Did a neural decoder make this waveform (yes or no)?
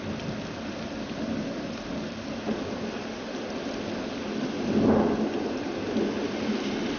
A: no